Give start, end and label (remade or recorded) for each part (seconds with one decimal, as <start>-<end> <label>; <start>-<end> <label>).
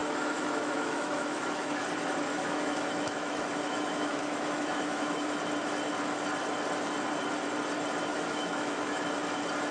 0.0-1.8 remade; 1.8-2.3 recorded; 2.3-5.4 remade; 5.4-8.1 recorded; 8.1-9.2 remade; 9.2-9.7 recorded